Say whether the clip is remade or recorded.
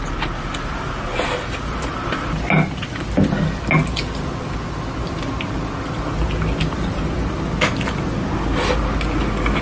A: recorded